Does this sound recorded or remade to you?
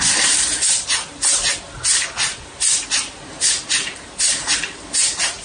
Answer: recorded